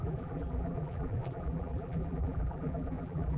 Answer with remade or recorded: remade